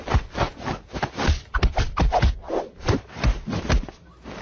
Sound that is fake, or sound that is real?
real